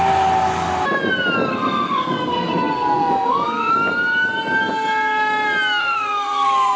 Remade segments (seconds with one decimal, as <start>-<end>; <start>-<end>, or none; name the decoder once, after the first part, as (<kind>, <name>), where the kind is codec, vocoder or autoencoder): 1.5-3.7 (codec, SNAC); 5.8-6.8